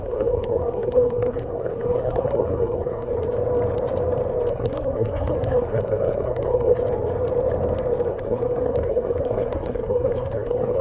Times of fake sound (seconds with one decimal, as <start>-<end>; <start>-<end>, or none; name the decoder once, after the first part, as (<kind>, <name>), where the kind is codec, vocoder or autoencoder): 0.0-3.1 (codec, SNAC); 4.5-6.8; 8.1-10.8